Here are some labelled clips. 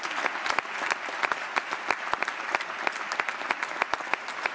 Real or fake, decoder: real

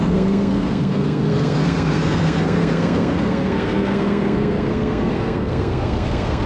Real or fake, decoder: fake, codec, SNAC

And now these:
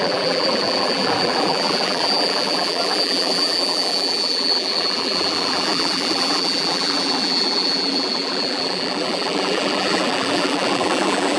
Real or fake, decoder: fake, vocoder, BigVGAN v2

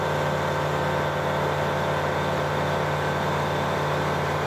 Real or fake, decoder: real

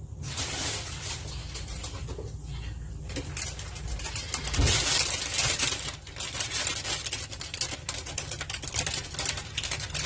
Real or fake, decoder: real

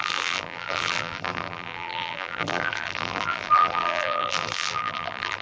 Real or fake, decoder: fake, vocoder, BigVGAN v2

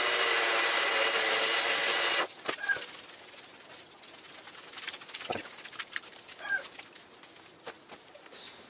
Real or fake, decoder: real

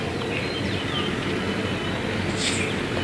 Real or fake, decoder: real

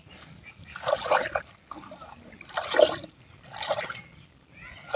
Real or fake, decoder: real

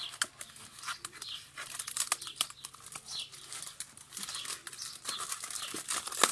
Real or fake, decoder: real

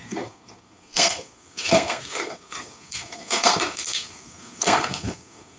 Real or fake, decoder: fake, codec, SNAC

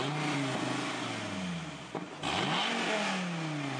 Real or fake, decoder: real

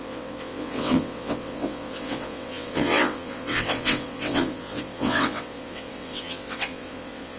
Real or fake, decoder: fake, vocoder, WaveNeXt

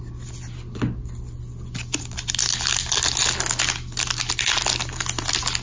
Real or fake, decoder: real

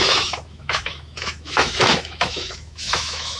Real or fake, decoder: fake, autoencoder, DAC-VAE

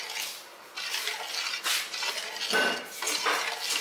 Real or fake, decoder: real